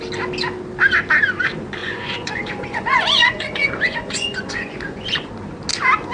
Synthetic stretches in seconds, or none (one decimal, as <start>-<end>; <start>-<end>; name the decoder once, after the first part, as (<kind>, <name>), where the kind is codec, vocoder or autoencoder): 1.8-5.3 (vocoder, Vocos)